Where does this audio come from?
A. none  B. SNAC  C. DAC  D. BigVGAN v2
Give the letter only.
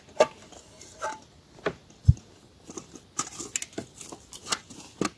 A